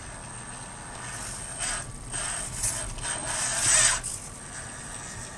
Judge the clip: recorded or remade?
recorded